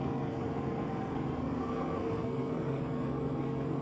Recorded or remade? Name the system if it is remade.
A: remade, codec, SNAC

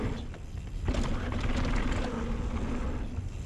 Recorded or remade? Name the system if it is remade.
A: recorded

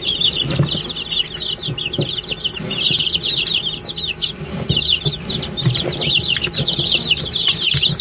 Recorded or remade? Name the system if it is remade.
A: recorded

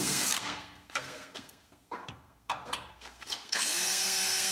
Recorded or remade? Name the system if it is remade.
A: remade, codec, SNAC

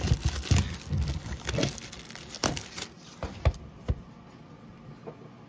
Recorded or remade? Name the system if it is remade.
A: recorded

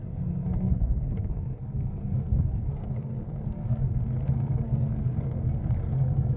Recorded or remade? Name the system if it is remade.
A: remade, codec, SNAC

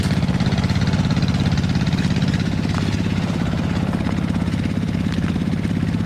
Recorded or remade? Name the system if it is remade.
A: recorded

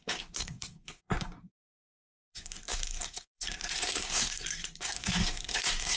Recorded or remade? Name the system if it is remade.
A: remade, codec, SNAC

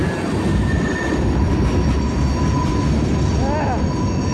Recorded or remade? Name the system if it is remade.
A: recorded